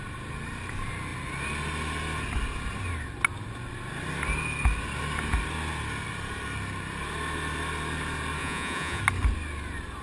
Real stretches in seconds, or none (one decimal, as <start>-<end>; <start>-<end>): 0.0-8.4; 9.0-10.0